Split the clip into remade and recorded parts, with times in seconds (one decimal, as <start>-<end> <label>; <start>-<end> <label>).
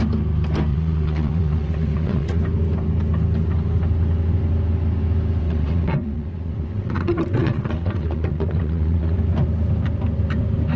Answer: 0.0-0.7 recorded; 0.7-2.4 remade; 2.4-5.4 recorded; 5.4-9.2 remade; 9.2-10.8 recorded